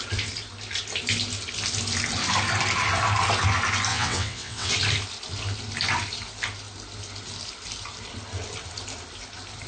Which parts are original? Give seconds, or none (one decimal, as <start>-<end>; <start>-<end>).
0.0-3.9; 4.7-9.7